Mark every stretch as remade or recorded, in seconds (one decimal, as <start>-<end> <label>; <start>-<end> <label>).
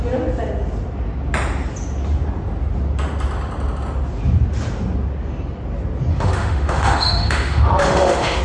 0.0-6.1 recorded; 6.1-8.4 remade